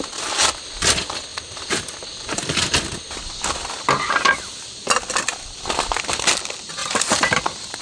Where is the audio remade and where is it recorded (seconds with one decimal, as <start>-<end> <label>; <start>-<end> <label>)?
0.0-1.3 recorded; 1.3-2.7 remade; 2.7-6.8 recorded; 6.8-7.8 remade

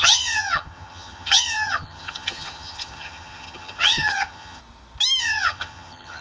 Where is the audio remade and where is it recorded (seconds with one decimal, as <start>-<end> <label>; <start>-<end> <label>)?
0.0-4.6 remade; 4.6-5.2 recorded; 5.2-6.2 remade

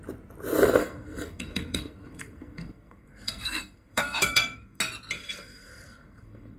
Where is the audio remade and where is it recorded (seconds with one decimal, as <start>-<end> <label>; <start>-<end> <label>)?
0.0-0.8 recorded; 0.8-4.8 remade; 4.8-5.2 recorded; 5.2-6.6 remade

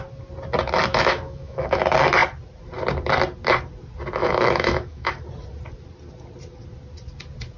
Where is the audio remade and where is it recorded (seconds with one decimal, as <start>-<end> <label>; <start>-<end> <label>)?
0.0-0.9 recorded; 0.9-1.8 remade; 1.8-4.2 recorded; 4.2-5.1 remade; 5.1-7.6 recorded